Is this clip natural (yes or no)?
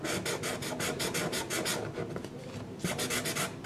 yes